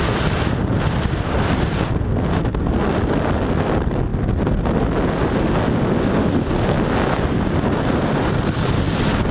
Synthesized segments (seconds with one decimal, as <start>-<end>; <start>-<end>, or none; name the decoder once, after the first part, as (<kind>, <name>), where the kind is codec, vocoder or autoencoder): none